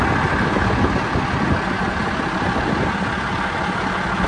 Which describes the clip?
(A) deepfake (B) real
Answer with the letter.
B